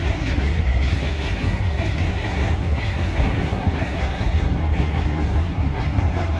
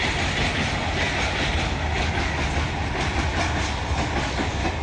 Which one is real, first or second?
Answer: second